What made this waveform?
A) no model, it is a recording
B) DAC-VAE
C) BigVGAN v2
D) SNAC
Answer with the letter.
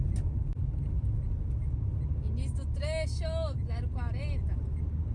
A